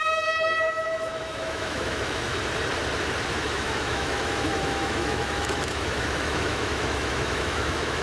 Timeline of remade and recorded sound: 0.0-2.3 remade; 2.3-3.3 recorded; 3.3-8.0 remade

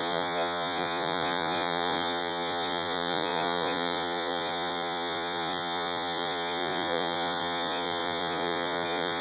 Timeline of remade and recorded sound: 0.0-9.2 remade

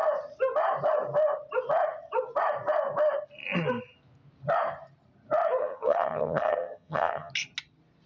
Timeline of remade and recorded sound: 0.0-5.6 recorded; 5.6-7.3 remade; 7.3-8.1 recorded

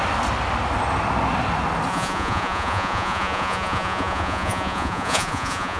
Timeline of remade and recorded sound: 0.0-1.9 recorded; 1.9-5.8 remade

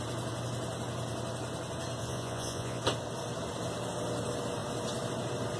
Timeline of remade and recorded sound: 0.0-2.0 recorded; 2.0-2.8 remade; 2.8-5.6 recorded